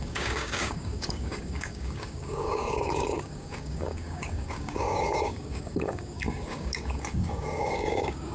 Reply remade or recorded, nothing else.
remade